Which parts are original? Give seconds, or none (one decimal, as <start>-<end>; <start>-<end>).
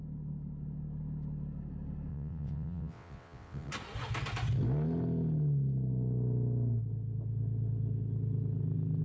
0.0-2.1; 3.7-9.0